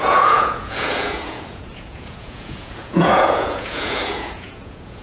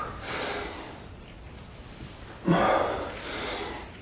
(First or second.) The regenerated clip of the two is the first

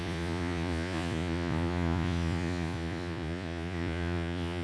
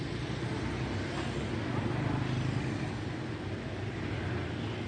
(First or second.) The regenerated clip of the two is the first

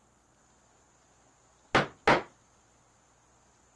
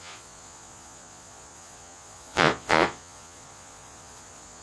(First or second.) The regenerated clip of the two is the second